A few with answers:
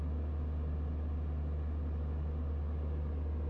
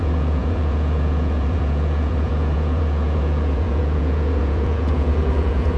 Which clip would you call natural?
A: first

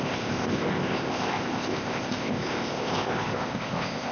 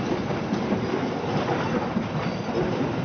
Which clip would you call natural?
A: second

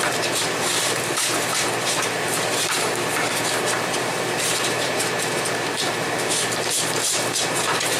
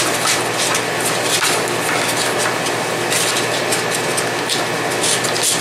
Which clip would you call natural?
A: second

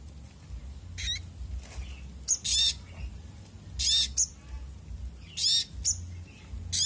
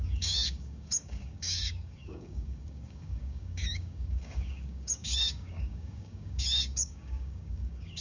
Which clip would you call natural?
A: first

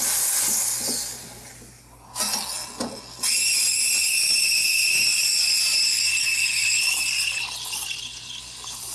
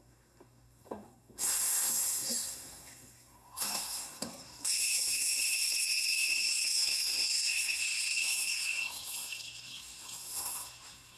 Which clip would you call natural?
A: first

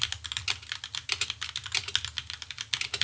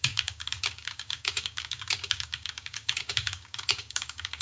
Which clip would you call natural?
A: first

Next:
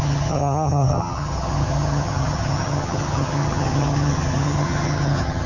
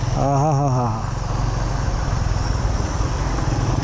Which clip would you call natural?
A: second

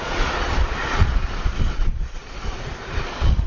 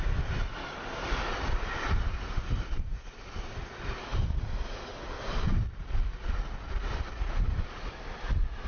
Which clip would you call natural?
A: second